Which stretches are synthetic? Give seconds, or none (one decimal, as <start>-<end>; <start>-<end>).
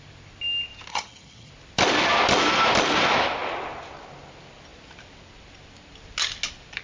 0.9-1.5